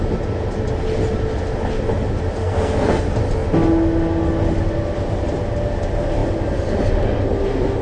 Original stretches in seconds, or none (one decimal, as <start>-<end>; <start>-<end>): 0.0-2.4; 3.0-7.8